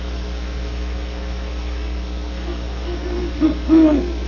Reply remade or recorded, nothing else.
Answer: remade